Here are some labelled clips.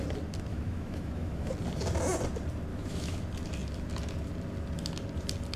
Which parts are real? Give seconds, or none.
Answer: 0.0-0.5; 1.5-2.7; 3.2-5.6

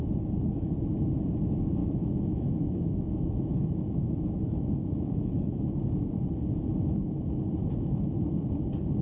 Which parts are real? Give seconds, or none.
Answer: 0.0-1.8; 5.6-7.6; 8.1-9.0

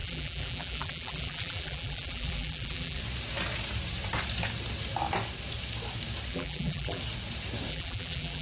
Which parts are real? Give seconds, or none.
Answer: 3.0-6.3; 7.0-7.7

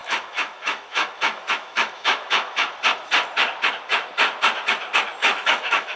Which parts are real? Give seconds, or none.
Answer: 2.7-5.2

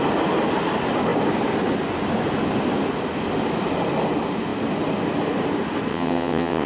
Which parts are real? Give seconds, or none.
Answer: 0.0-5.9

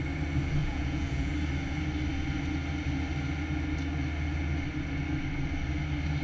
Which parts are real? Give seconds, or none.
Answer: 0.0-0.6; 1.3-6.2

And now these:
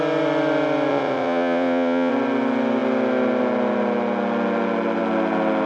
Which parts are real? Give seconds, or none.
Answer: 0.0-0.9; 2.1-5.7